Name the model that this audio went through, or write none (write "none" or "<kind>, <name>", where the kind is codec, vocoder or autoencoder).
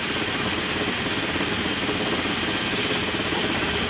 none